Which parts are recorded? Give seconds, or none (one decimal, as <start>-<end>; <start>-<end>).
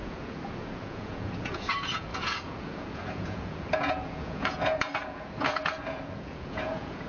none